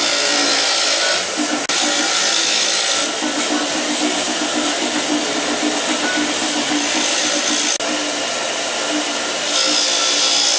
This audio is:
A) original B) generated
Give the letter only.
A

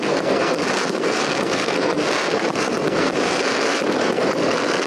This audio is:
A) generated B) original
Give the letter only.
A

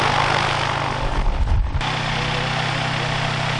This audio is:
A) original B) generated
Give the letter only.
A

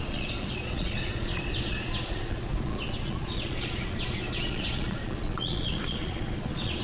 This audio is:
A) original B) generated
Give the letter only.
B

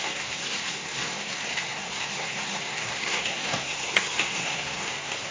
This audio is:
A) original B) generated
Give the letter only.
B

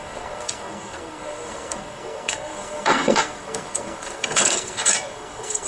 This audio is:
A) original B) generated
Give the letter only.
B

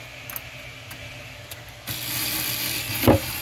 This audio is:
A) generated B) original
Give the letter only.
B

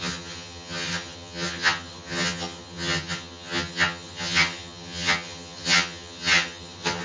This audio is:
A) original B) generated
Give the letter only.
B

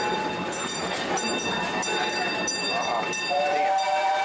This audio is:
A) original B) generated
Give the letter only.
B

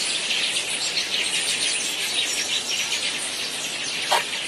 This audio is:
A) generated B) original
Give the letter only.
B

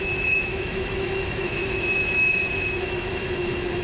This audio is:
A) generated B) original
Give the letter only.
A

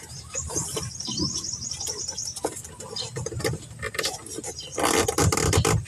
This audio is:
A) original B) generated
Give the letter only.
A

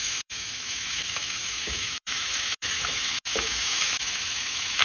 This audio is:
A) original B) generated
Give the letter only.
B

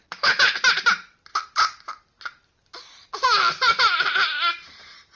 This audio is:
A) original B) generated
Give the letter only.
A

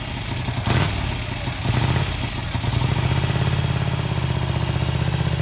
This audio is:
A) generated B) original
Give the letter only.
B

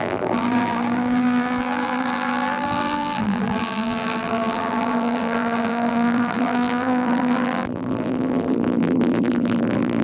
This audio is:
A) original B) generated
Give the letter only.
B